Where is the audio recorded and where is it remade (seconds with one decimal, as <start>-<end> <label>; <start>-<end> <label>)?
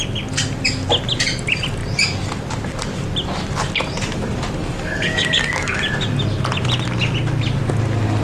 0.0-4.6 recorded; 4.6-5.8 remade; 5.8-8.2 recorded